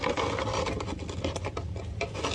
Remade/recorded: recorded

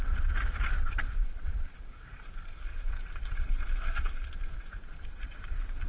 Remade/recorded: remade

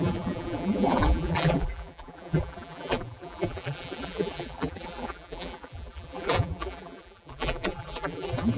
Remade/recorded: remade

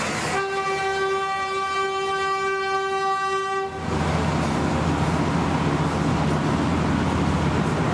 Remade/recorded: recorded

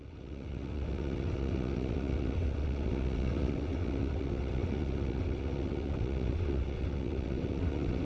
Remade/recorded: remade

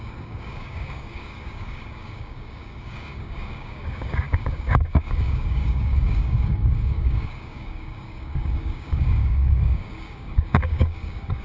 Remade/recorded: remade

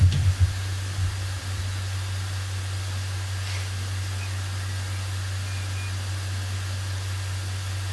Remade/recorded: recorded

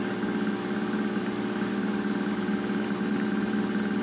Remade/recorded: recorded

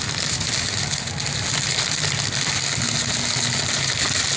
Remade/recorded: recorded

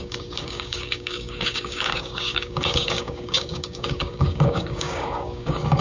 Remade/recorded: remade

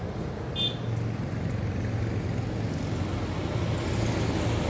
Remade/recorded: recorded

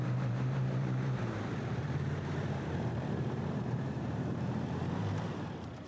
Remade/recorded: remade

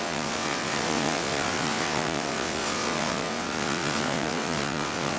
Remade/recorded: remade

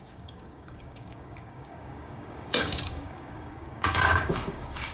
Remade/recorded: remade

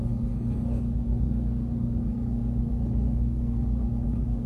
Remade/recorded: remade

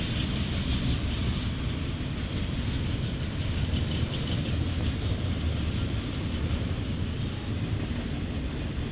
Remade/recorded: recorded